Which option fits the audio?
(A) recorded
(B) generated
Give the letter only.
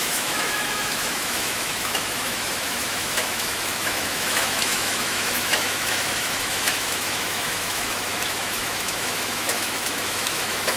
B